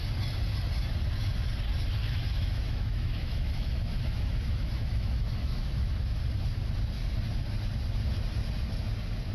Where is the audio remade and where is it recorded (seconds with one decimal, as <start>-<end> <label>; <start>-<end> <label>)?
0.0-2.0 recorded; 2.0-6.2 remade; 6.2-9.3 recorded